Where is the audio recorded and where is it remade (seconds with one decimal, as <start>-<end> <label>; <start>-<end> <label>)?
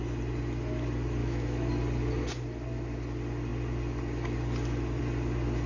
0.0-1.2 recorded; 1.2-1.7 remade; 1.7-5.7 recorded